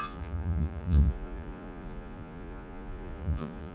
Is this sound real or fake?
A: fake